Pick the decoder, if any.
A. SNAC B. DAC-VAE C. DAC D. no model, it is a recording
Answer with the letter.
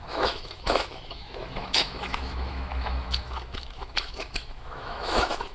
B